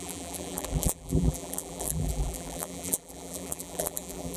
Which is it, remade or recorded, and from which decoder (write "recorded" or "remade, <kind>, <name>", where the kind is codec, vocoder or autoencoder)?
remade, vocoder, BigVGAN v2